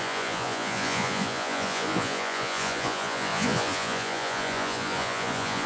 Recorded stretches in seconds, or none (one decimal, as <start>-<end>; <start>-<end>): none